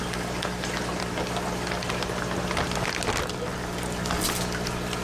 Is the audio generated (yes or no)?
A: no